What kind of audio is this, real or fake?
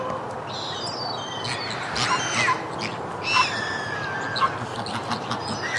real